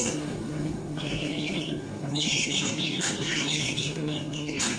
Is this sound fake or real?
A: fake